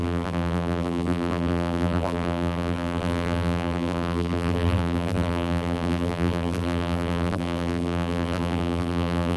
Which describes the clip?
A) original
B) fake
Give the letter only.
B